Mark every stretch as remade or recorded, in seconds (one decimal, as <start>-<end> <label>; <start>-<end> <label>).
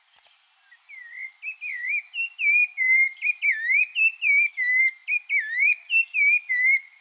0.0-7.0 recorded